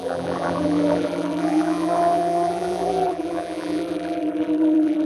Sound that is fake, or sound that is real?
fake